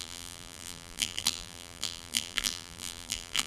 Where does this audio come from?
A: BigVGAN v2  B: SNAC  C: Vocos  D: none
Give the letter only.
A